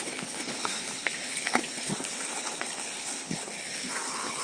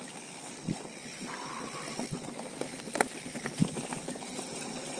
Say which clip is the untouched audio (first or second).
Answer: second